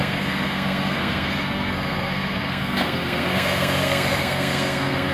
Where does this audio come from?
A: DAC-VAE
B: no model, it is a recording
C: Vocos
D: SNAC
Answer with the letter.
D